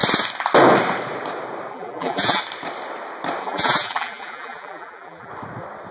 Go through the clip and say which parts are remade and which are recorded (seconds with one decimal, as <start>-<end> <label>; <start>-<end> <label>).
0.0-1.7 recorded; 1.7-2.4 remade; 2.4-3.4 recorded; 3.4-5.3 remade; 5.3-5.9 recorded